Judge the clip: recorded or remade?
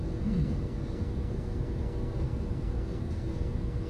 remade